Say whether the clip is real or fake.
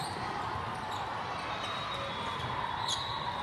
real